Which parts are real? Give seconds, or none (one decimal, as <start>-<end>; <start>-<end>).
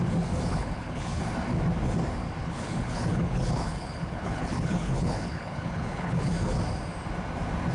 0.0-0.5; 1.2-2.4; 6.3-7.7